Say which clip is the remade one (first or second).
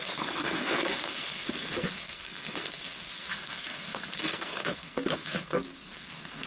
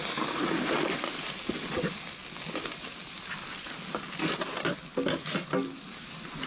first